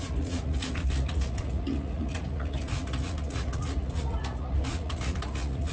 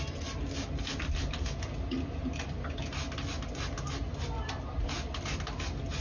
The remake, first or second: first